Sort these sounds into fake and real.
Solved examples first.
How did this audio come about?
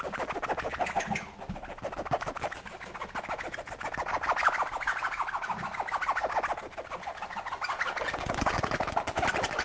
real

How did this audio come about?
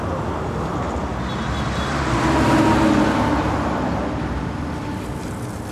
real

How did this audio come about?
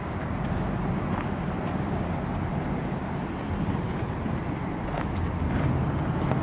real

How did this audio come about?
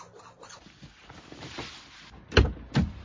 real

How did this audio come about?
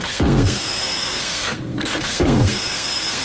fake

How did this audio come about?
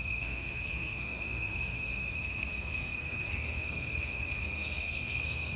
fake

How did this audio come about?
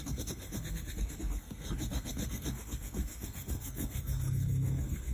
fake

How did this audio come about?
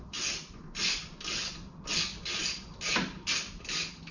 real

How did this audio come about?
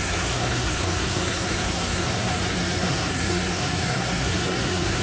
fake